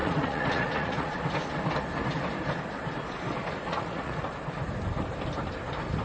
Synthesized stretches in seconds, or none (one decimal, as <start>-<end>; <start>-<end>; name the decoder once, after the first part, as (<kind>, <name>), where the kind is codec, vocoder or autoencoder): 0.0-1.2 (vocoder, Vocos); 3.4-4.3